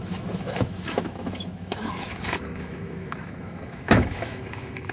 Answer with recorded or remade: remade